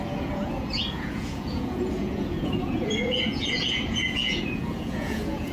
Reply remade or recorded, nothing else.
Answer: remade